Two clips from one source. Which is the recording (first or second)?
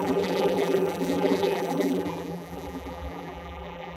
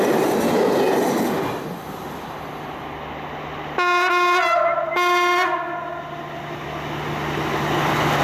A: second